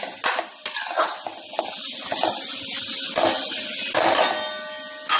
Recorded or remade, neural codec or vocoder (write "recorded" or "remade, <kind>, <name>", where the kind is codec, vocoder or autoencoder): recorded